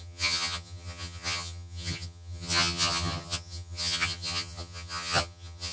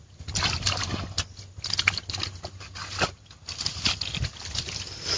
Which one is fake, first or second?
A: first